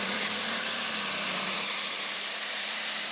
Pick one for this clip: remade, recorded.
remade